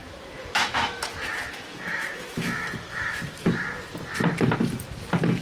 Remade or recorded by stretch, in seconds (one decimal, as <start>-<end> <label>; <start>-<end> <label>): 0.0-3.2 remade; 3.2-5.4 recorded